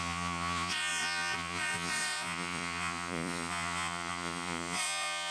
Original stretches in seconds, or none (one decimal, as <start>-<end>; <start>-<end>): none